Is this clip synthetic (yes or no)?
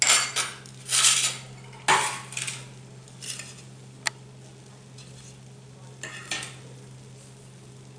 no